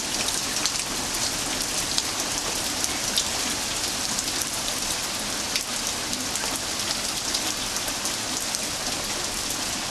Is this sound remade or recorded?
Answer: recorded